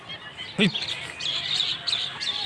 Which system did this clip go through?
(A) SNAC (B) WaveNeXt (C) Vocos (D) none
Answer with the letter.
D